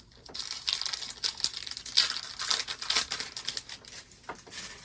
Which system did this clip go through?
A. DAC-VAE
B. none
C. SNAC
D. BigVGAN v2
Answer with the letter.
B